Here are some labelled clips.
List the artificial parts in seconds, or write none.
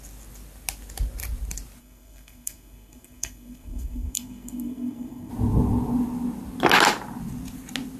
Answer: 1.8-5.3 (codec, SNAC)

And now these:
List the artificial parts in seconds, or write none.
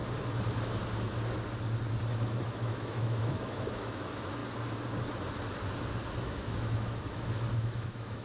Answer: 2.1-4.4 (autoencoder, DAC-VAE); 6.2-8.2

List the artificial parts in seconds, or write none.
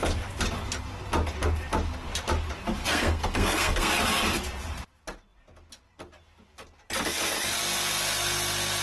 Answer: 2.8-3.9 (codec, SNAC)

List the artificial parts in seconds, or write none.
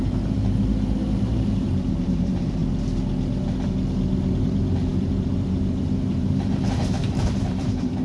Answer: 0.0-2.6 (vocoder, BigVGAN v2); 4.4-8.0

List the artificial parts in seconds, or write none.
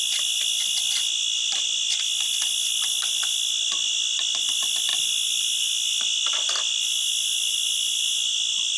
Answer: none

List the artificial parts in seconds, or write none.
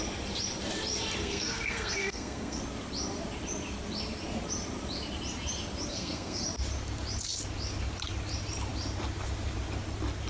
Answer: 1.2-2.6 (codec, SNAC); 5.9-6.4